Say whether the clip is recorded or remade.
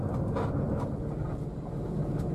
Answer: recorded